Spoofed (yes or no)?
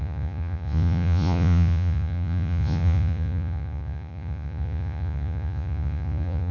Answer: yes